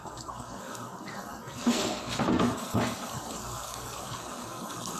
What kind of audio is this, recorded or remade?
remade